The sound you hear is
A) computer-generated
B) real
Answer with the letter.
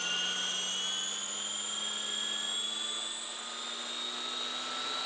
B